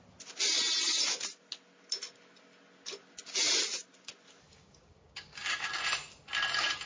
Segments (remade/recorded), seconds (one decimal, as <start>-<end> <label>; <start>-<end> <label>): 0.0-4.5 recorded; 4.5-5.7 remade; 5.7-6.9 recorded